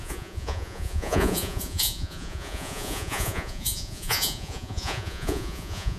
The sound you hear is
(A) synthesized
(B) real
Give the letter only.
A